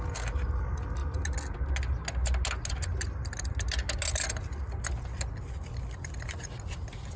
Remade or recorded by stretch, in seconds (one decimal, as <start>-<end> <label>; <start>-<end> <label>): 0.0-7.2 recorded